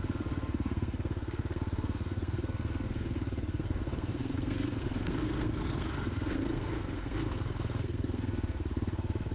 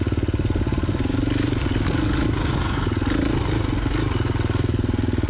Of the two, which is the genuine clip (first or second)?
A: second